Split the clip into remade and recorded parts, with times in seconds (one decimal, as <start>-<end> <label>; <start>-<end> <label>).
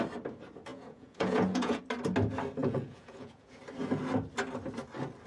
0.0-0.7 recorded; 0.7-1.8 remade; 1.8-2.6 recorded; 2.6-3.6 remade; 3.6-5.3 recorded